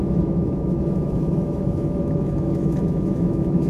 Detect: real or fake fake